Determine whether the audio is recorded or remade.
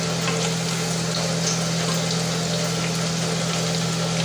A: recorded